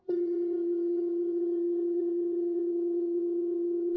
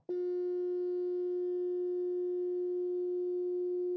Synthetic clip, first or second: first